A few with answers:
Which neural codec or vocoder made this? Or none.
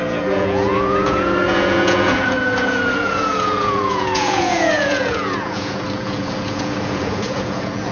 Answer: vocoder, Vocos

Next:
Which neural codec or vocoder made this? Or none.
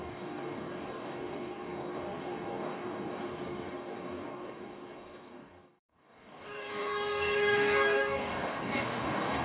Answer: codec, DAC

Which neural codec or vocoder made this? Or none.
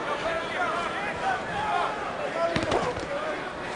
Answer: none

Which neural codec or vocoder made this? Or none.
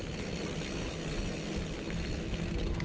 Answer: none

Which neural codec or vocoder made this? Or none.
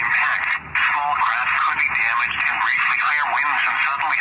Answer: none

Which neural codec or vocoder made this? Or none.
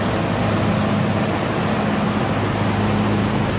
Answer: none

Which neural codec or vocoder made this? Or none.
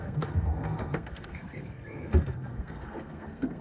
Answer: codec, SNAC